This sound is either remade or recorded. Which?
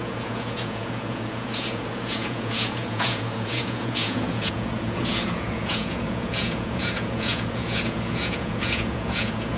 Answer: remade